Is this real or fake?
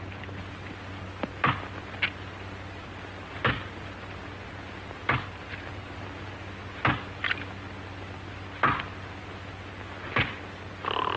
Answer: real